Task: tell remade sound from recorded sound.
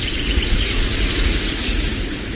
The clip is remade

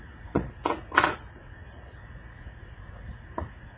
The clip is remade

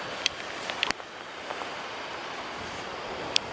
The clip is recorded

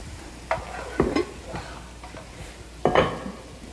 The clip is recorded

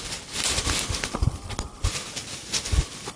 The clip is recorded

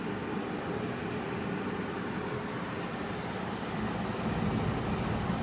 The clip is recorded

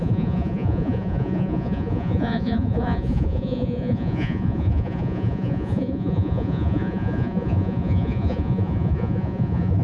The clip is remade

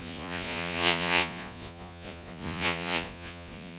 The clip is remade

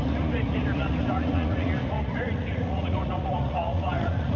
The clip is remade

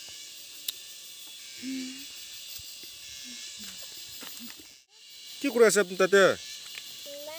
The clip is recorded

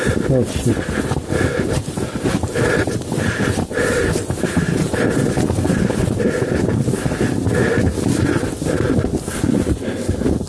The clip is recorded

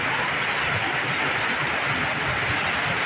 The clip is recorded